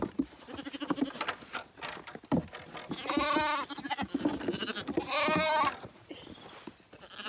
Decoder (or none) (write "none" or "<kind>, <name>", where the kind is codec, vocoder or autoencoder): none